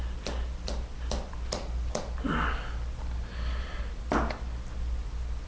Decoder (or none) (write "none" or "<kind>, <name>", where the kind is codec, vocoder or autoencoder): none